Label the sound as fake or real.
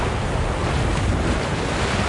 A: real